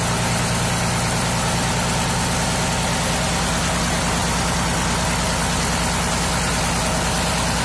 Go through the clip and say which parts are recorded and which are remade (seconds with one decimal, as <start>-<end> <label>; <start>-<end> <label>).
0.0-7.6 recorded